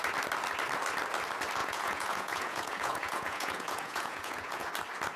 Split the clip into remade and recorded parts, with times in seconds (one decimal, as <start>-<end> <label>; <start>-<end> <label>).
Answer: 0.0-1.6 recorded; 1.6-4.7 remade; 4.7-5.2 recorded